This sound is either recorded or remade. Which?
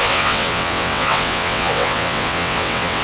remade